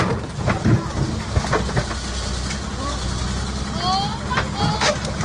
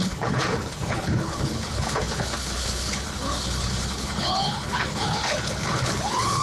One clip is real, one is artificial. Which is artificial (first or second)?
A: second